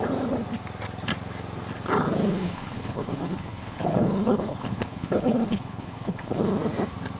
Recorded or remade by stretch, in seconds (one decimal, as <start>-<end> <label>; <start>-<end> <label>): 0.0-2.3 recorded; 2.3-6.5 remade; 6.5-7.2 recorded